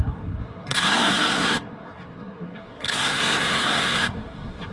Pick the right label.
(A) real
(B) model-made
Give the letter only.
B